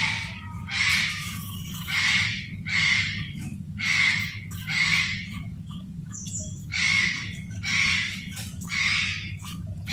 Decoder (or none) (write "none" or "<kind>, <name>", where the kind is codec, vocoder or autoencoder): codec, DAC